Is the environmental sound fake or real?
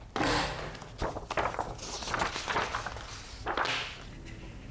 real